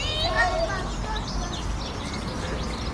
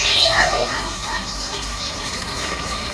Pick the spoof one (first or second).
second